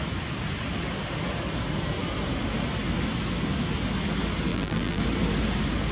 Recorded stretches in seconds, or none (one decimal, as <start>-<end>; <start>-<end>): 0.0-4.5; 5.0-5.9